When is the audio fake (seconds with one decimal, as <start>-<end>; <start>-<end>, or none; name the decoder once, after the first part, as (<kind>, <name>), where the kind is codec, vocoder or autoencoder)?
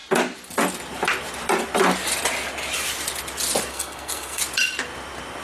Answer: 3.7-4.4 (codec, SNAC)